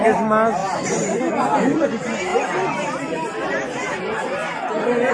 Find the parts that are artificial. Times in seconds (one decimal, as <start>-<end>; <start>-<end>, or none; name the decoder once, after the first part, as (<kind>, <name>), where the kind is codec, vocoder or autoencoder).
0.6-1.2 (vocoder, BigVGAN v2); 2.3-4.0